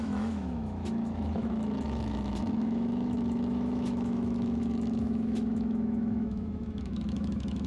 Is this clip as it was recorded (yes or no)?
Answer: no